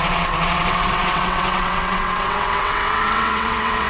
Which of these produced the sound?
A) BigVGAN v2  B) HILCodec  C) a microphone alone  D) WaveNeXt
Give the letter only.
D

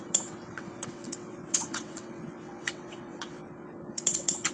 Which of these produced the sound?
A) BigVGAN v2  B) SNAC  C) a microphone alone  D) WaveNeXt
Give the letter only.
D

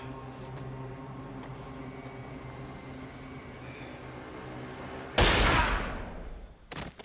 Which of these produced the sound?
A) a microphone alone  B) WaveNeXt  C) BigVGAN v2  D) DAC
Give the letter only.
A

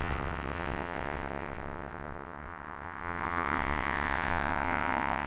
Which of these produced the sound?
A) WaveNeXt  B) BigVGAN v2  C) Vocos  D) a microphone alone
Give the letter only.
A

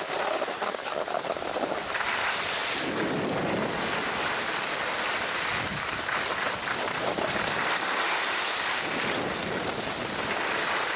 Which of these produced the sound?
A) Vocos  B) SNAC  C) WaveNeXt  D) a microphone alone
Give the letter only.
D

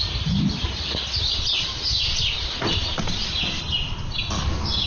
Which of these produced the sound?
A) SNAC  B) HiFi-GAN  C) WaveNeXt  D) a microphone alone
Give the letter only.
D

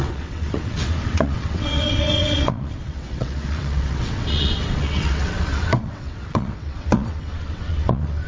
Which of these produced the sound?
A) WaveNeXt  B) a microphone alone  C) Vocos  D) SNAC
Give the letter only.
A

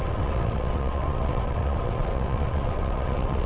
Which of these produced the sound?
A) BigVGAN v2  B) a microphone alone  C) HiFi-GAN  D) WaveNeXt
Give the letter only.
D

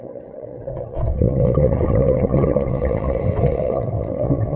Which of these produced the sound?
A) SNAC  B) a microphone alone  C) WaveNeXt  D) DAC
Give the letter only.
C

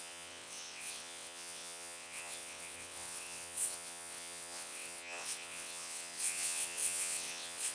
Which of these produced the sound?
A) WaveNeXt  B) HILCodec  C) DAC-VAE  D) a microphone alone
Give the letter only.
A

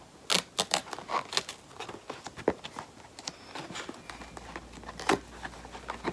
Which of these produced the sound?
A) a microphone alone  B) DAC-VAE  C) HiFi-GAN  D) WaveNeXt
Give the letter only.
A